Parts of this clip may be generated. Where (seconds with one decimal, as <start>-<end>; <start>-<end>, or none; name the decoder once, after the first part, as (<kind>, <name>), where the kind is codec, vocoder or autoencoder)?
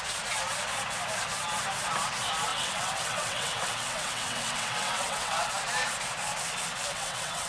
2.5-5.5 (vocoder, WaveNeXt); 6.9-7.5